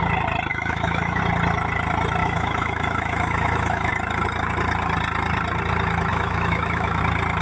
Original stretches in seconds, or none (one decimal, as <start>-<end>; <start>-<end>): 0.0-0.5; 1.2-2.2; 3.9-6.1; 7.0-7.4